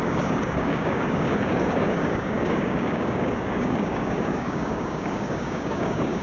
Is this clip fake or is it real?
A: fake